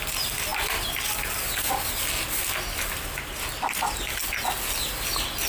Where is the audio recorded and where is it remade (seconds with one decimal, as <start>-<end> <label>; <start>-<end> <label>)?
0.0-5.5 recorded